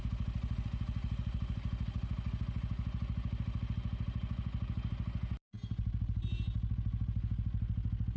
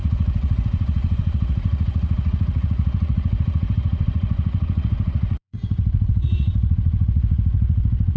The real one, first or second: first